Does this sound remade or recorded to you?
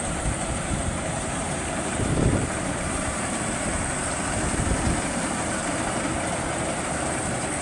remade